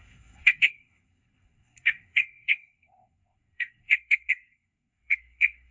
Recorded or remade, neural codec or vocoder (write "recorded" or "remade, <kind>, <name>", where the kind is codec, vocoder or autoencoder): remade, codec, SNAC